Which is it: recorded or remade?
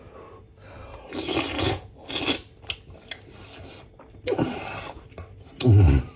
recorded